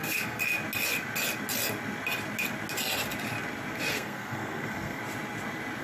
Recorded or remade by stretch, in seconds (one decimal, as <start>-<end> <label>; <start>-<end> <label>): 0.0-0.4 remade; 0.4-3.9 recorded; 3.9-5.0 remade; 5.0-5.8 recorded